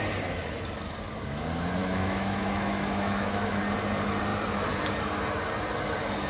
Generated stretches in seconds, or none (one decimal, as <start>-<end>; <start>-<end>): 1.8-3.6